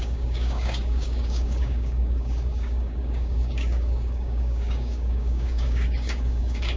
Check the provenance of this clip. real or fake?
fake